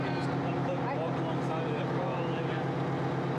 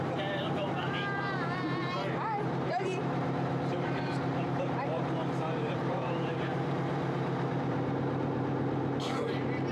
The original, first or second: first